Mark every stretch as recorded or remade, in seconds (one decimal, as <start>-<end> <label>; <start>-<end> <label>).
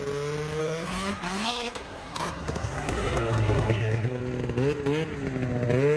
0.0-0.6 recorded; 0.6-4.2 remade; 4.2-6.0 recorded